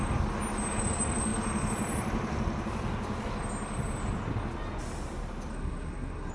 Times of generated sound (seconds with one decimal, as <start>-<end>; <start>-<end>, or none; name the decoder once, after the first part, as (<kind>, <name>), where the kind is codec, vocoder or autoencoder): 5.5-6.3 (codec, SNAC)